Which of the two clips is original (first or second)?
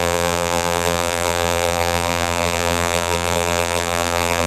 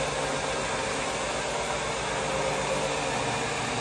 second